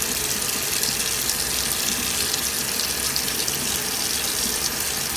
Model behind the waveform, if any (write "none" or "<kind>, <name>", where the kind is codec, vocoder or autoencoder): none